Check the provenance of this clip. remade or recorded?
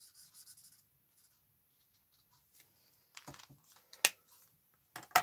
recorded